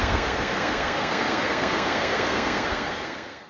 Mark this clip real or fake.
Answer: fake